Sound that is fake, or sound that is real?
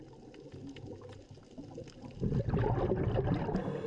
real